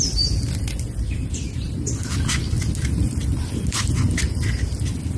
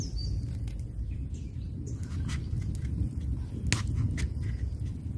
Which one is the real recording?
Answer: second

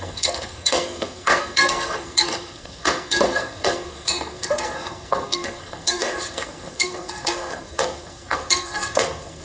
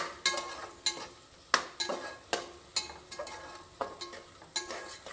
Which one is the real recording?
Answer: second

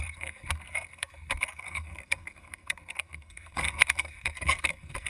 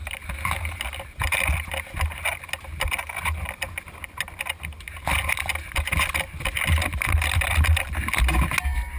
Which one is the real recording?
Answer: second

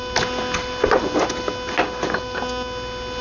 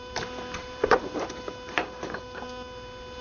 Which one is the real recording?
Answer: first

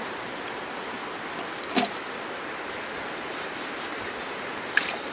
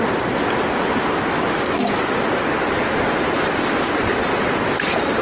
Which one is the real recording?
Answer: second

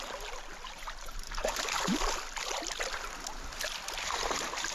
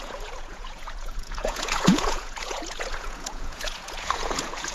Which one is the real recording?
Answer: first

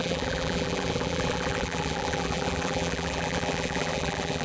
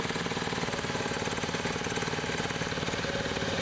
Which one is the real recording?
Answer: second